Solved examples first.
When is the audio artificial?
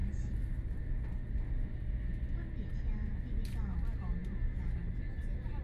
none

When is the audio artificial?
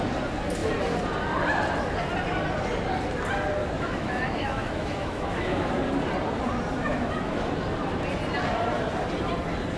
3.6-5.7 (autoencoder, DAC-VAE); 6.9-7.5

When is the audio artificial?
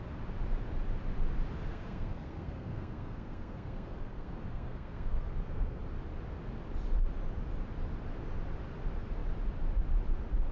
1.7-5.8 (codec, SNAC)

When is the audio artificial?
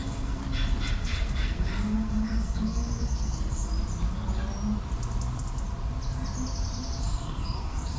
0.0-0.4 (codec, SNAC); 0.9-3.7; 7.0-8.0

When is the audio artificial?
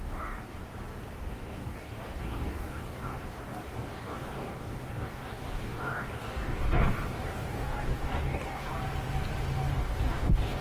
0.0-0.6 (codec, DAC); 1.3-8.7; 9.7-10.6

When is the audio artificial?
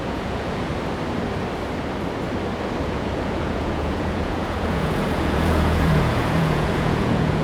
0.0-0.7 (vocoder, Vocos); 2.8-7.4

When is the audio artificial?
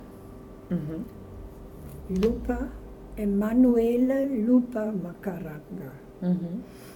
1.9-2.5 (vocoder, BigVGAN v2); 3.7-6.1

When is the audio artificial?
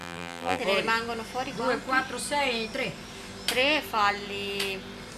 0.0-0.6 (vocoder, BigVGAN v2)